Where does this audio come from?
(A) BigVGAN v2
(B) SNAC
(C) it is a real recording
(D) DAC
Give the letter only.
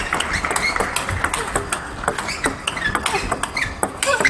C